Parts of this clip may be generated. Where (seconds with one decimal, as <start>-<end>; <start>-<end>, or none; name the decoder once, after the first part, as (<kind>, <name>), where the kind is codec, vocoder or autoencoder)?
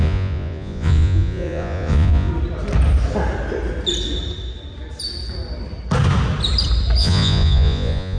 0.0-2.3 (vocoder, Vocos); 7.0-8.2